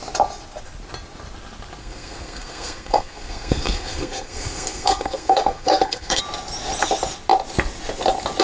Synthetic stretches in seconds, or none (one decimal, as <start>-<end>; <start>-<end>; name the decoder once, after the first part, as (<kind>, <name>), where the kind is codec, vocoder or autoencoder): 1.8-6.2 (codec, SNAC)